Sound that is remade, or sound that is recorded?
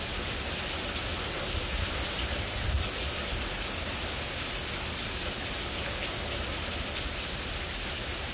recorded